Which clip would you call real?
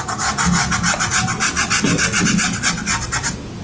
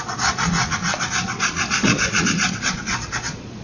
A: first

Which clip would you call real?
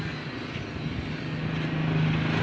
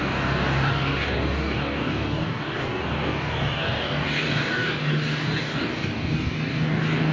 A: first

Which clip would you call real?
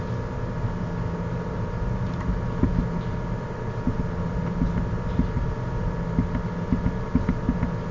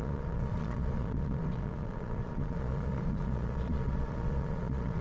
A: first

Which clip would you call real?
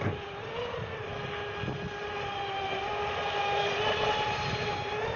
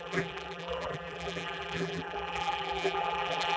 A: first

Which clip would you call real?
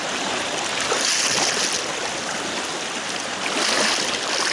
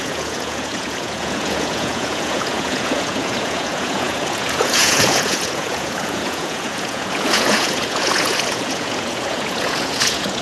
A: first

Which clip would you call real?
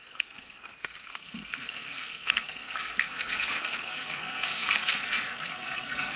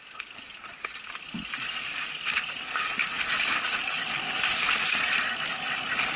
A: second